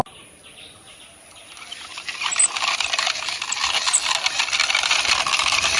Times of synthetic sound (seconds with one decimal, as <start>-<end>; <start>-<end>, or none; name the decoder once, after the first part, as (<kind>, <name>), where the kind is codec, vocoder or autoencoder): 0.0-1.4 (vocoder, BigVGAN v2); 4.9-5.8